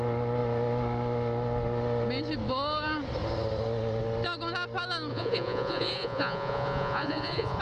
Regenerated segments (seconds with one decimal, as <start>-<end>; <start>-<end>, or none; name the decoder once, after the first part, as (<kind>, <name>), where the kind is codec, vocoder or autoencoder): 5.1-7.6 (vocoder, Vocos)